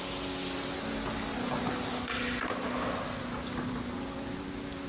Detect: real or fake real